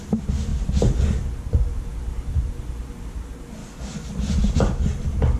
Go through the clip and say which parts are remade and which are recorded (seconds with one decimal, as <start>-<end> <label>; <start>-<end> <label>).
0.0-3.6 recorded; 3.6-4.1 remade; 4.1-5.4 recorded